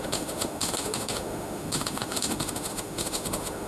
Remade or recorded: remade